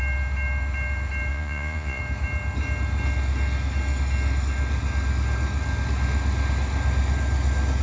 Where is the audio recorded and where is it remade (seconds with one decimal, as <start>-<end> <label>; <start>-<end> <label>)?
0.0-1.3 recorded; 1.3-2.0 remade; 2.0-7.8 recorded